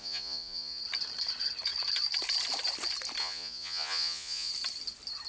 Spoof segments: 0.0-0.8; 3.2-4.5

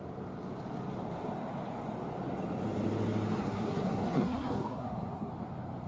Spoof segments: 3.4-5.3

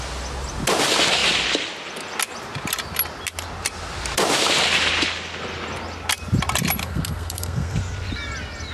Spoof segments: 6.8-7.8

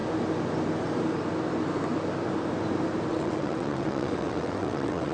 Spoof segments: 3.1-5.1

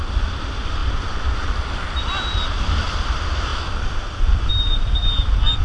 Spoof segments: none

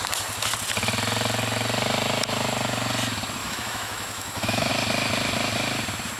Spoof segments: 3.4-4.7

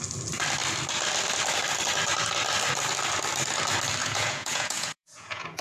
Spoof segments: 4.0-5.6

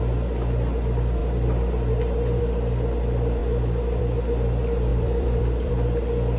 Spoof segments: 4.9-5.7